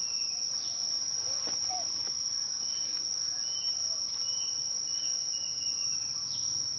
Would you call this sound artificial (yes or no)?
no